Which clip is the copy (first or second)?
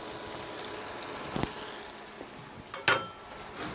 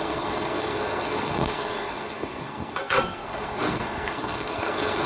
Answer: second